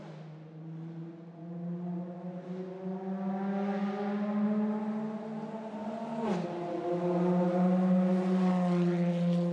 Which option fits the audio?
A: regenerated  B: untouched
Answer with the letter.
B